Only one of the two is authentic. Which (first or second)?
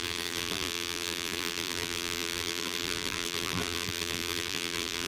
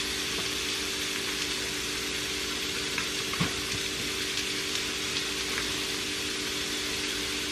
second